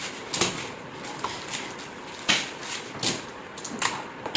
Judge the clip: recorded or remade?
recorded